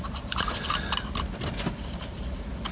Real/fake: real